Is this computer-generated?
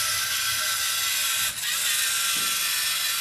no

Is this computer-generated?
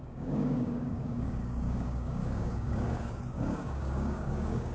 yes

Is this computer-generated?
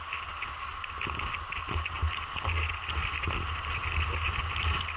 no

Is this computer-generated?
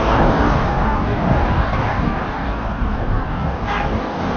yes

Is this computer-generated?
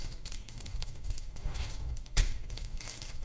yes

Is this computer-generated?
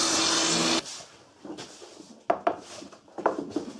no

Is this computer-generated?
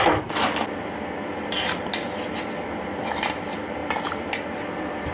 no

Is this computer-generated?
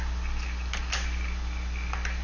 no